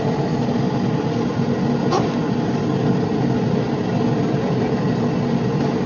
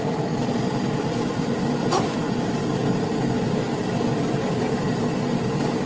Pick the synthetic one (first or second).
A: second